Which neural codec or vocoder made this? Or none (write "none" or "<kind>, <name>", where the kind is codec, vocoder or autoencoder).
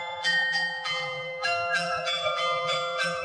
vocoder, BigVGAN v2